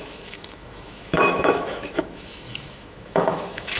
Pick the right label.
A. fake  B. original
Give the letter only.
A